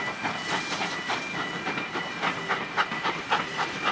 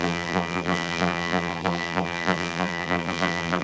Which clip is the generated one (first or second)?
second